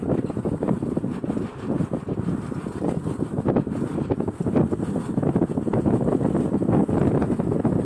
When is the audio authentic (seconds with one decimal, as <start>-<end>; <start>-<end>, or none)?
0.0-7.8